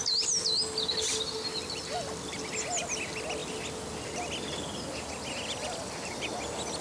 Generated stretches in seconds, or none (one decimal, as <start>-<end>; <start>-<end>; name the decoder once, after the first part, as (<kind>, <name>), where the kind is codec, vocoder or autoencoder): none